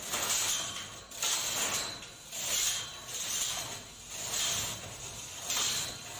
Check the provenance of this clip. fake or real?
real